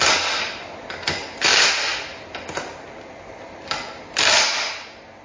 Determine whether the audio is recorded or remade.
recorded